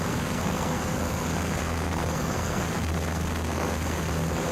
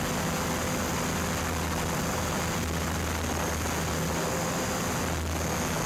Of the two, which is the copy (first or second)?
first